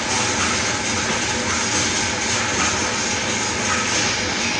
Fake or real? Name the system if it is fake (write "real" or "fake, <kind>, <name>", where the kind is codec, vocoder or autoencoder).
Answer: real